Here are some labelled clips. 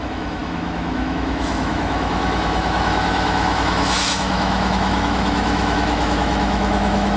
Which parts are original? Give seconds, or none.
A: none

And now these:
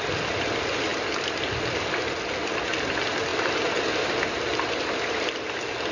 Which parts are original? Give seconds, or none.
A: 0.0-5.9

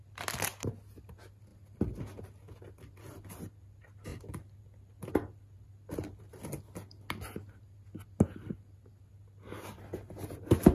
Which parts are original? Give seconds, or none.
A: 0.0-10.7

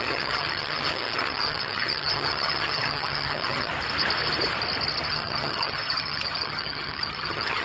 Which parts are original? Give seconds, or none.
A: 3.7-5.1